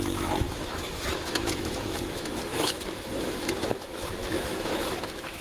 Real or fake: fake